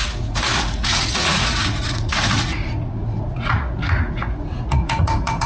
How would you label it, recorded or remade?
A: remade